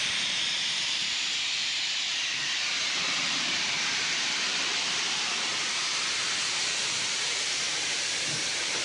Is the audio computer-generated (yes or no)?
yes